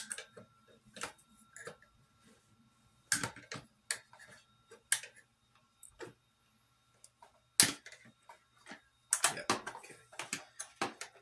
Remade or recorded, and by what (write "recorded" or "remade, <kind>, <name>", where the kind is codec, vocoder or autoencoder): recorded